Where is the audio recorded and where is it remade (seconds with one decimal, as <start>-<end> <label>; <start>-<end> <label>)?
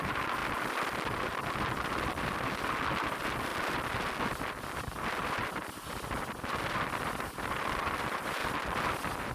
0.0-8.4 recorded; 8.4-9.3 remade